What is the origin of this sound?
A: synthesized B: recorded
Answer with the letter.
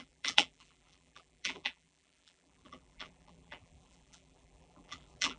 A